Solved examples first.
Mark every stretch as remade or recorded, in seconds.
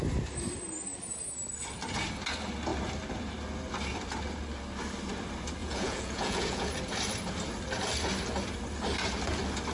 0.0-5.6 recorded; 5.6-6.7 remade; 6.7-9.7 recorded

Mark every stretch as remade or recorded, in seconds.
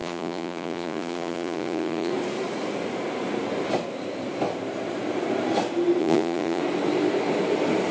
0.0-2.1 remade; 2.1-6.0 recorded; 6.0-6.6 remade; 6.6-7.9 recorded